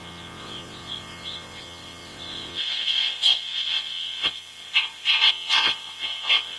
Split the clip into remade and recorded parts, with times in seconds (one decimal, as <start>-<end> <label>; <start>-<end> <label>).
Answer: 0.0-6.6 remade